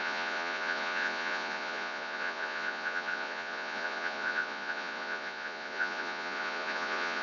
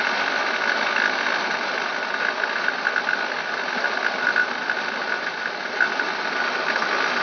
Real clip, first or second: second